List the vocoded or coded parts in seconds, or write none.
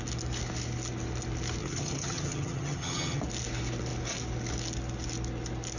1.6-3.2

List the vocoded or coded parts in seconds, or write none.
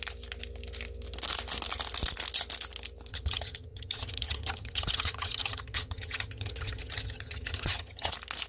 3.1-8.1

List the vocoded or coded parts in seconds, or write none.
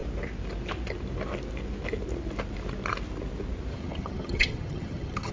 3.7-5.3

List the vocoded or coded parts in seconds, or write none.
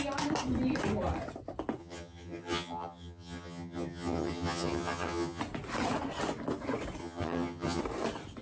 1.8-5.4; 7.0-7.8